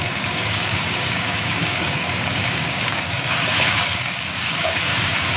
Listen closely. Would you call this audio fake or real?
fake